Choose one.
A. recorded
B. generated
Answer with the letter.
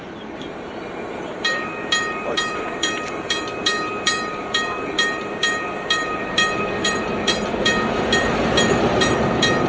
B